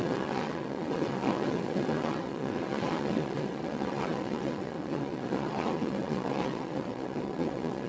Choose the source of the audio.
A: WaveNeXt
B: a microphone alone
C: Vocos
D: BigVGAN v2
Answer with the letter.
A